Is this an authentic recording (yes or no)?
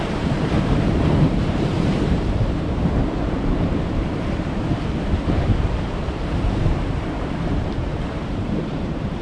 no